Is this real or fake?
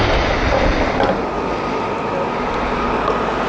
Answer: real